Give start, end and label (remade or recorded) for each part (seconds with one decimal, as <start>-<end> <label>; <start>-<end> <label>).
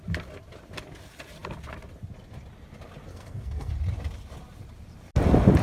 0.0-3.1 recorded; 3.1-3.7 remade; 3.7-5.6 recorded